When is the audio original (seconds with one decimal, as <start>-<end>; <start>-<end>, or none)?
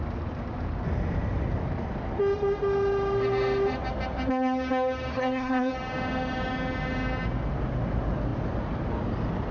0.0-5.1; 5.7-9.5